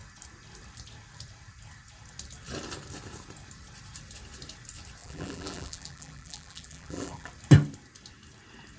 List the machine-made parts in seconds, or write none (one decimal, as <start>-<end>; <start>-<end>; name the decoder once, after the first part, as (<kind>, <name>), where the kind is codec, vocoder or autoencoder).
5.0-7.3 (vocoder, BigVGAN v2)